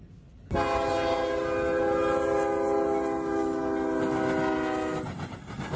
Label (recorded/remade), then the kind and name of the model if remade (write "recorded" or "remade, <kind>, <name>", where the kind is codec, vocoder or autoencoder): recorded